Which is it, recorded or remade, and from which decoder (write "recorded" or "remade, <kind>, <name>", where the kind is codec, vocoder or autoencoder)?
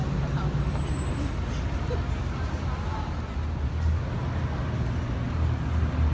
recorded